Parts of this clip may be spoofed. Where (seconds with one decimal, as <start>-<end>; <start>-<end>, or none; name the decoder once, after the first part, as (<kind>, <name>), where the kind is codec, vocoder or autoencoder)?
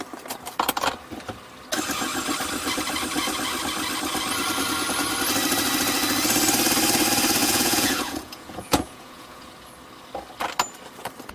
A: 7.4-9.5 (vocoder, Vocos)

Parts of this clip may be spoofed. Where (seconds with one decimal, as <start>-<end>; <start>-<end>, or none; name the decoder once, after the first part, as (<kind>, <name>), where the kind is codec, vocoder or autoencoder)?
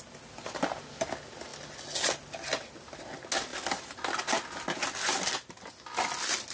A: none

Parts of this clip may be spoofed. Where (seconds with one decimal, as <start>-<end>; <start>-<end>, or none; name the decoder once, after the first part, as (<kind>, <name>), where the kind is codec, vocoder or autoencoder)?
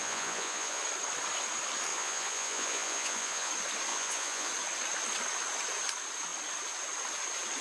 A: 0.0-0.8 (vocoder, Vocos); 1.9-3.5; 3.9-4.5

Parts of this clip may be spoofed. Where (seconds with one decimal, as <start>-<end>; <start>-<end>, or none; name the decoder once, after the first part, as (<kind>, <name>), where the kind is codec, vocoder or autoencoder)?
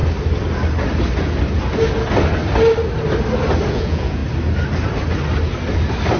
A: 3.7-4.2 (vocoder, Vocos)